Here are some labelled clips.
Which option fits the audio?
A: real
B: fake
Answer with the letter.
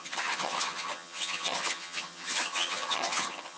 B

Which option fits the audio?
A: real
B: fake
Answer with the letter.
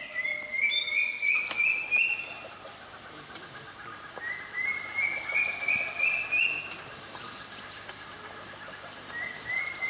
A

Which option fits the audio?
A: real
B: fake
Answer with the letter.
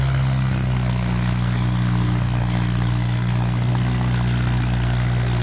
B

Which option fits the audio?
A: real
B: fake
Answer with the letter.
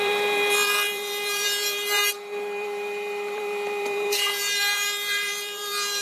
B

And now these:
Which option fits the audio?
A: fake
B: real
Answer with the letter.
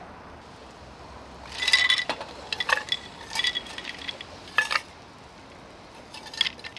B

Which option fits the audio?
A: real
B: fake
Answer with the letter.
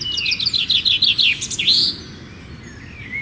A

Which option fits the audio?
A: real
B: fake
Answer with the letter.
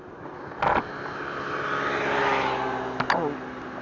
A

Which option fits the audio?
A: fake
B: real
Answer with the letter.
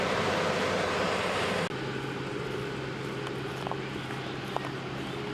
B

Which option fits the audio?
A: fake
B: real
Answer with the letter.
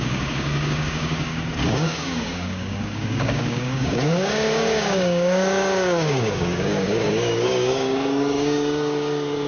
A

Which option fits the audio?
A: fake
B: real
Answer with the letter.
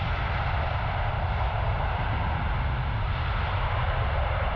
A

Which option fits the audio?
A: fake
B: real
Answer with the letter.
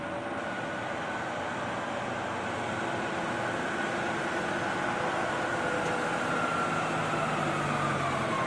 B